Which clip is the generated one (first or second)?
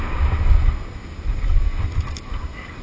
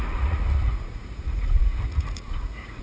second